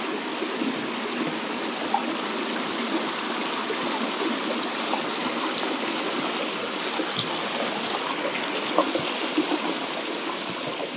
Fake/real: real